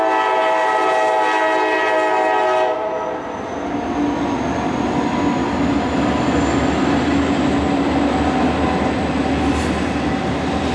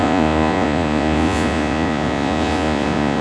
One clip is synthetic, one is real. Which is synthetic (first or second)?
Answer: second